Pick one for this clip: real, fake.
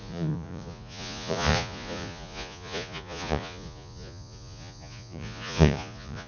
fake